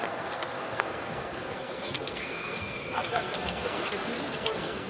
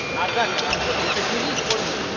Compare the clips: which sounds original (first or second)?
second